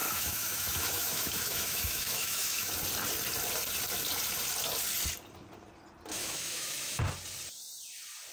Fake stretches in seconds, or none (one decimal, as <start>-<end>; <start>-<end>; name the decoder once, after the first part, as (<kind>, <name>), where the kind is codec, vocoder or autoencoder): 0.0-2.7 (autoencoder, DAC-VAE); 6.1-7.0